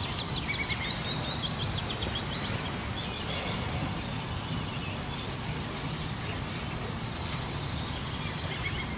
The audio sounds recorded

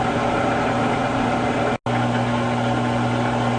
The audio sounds recorded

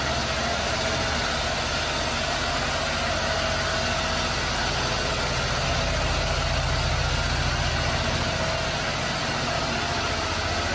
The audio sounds recorded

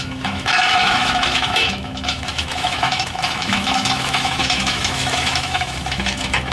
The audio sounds remade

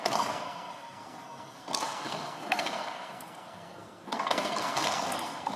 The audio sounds remade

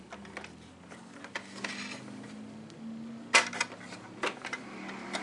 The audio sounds recorded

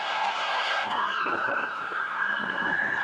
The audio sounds remade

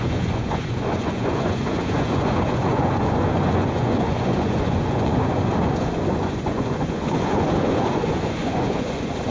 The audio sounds remade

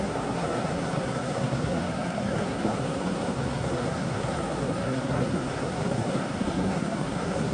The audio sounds remade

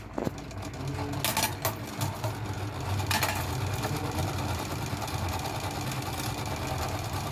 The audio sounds recorded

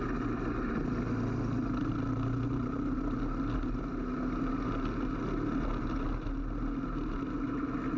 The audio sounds recorded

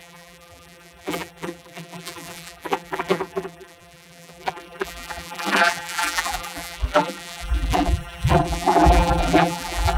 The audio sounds remade